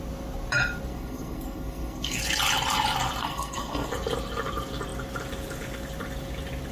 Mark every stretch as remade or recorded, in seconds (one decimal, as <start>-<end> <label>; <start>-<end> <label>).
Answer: 0.0-0.9 recorded; 0.9-2.2 remade; 2.2-3.2 recorded; 3.2-3.9 remade; 3.9-6.7 recorded